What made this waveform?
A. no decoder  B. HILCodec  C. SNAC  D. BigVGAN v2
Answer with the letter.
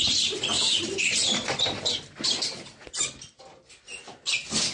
A